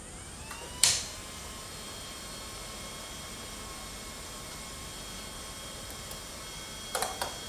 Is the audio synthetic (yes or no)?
yes